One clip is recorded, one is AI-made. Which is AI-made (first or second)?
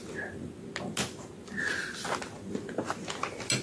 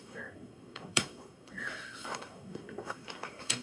second